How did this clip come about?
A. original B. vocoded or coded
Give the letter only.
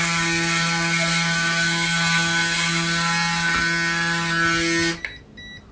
A